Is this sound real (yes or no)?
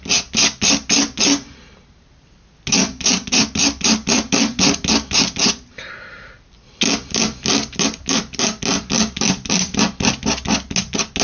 yes